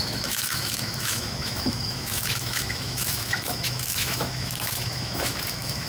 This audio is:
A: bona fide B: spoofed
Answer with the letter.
B